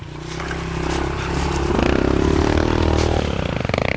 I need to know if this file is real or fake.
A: real